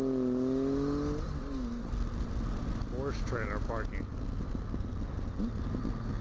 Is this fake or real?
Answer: real